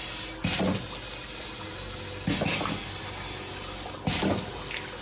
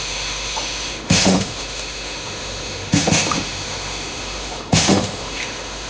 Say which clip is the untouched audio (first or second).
first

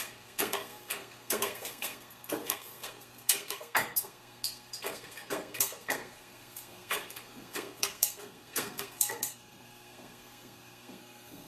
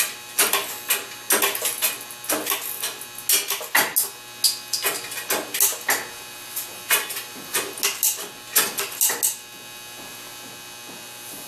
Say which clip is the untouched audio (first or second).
second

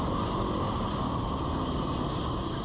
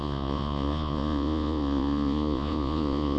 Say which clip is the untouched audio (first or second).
first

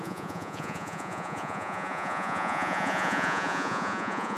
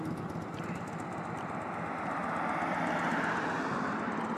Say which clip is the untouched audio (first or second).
second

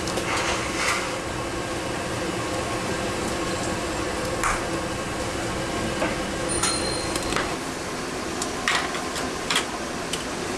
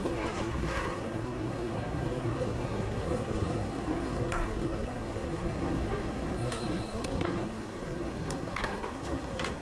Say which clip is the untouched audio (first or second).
first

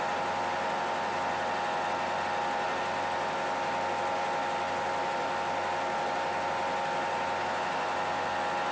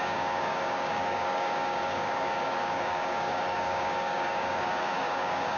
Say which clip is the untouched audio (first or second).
first